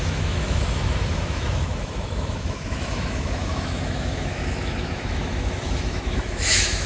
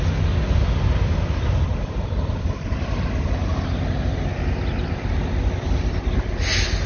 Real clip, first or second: second